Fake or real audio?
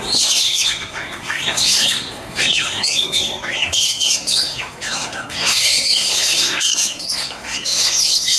fake